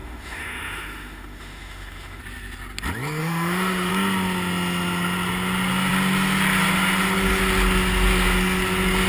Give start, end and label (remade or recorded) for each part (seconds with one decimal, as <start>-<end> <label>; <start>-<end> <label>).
0.0-2.2 remade; 2.2-3.2 recorded; 3.2-3.9 remade; 3.9-9.1 recorded